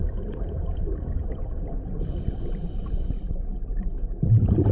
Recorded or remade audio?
recorded